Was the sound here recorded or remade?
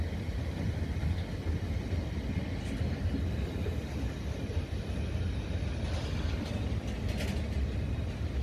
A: recorded